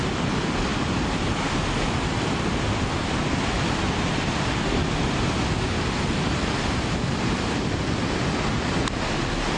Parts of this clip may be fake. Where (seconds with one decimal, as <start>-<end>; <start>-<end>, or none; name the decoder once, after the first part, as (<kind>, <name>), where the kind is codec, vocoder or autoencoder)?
none